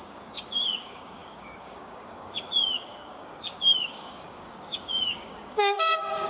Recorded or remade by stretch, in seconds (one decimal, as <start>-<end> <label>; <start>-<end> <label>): 0.0-6.3 remade